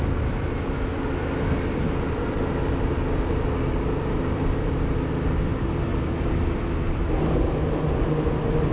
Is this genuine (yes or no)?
yes